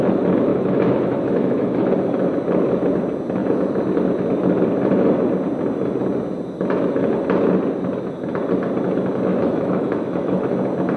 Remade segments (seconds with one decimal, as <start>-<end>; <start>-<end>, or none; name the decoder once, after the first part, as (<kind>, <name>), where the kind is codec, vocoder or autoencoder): 0.5-1.9 (autoencoder, DAC-VAE); 9.3-10.4